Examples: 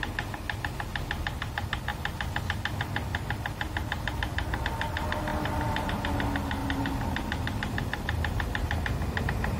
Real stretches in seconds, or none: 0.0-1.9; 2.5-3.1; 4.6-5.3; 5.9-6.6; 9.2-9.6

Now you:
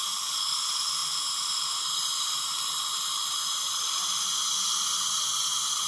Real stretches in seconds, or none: 0.0-5.9